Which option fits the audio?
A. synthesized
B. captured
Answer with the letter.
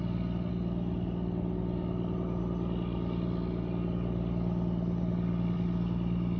B